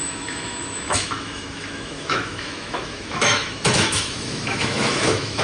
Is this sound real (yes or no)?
no